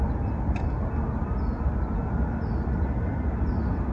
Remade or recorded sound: recorded